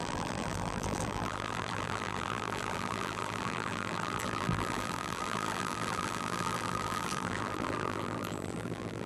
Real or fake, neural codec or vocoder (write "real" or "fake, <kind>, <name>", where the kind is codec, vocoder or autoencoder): fake, vocoder, BigVGAN v2